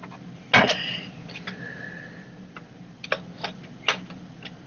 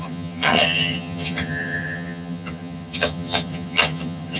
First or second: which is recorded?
first